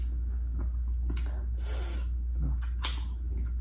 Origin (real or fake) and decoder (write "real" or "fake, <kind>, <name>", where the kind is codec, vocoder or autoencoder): real